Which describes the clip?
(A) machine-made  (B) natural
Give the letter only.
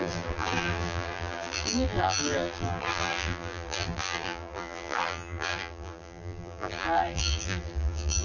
A